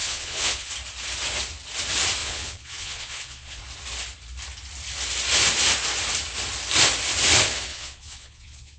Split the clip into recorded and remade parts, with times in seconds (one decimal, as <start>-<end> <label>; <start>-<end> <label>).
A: 0.0-0.7 remade; 0.7-2.2 recorded; 2.2-3.6 remade; 3.6-7.7 recorded; 7.7-8.8 remade